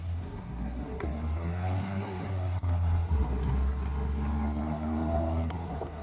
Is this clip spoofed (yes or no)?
yes